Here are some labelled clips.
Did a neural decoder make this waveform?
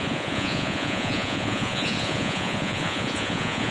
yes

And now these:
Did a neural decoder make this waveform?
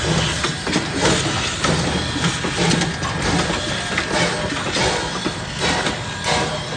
no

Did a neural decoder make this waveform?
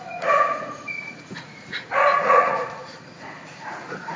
yes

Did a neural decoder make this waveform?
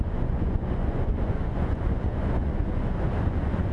yes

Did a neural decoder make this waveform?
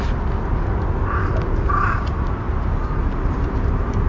no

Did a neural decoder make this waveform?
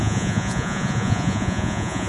yes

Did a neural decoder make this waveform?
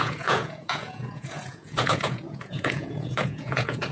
yes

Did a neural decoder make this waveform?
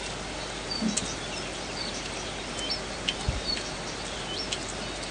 no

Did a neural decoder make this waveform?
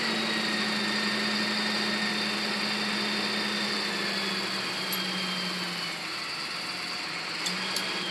no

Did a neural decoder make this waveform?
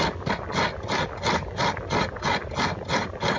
no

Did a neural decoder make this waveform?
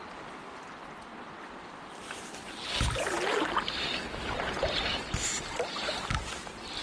no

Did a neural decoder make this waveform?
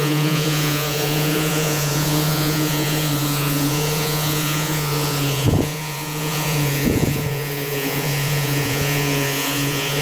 yes